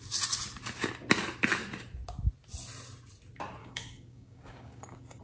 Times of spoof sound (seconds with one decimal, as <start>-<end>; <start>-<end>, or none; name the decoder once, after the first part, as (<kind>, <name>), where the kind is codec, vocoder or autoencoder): 3.6-5.2 (codec, DAC)